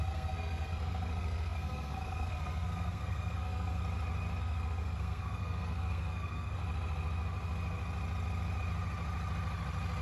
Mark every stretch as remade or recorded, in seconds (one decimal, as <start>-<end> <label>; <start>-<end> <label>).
0.0-3.8 remade; 3.8-4.4 recorded; 4.4-6.6 remade; 6.6-10.0 recorded